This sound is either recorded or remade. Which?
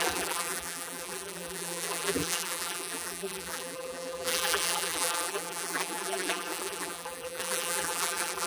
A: remade